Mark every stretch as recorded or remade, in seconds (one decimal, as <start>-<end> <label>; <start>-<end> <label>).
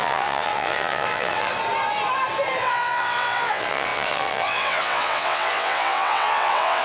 0.0-1.5 remade; 1.5-2.6 recorded; 2.6-6.8 remade